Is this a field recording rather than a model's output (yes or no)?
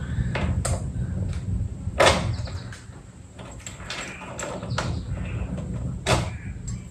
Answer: yes